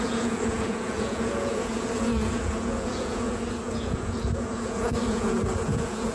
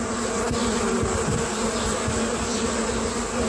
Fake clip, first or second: first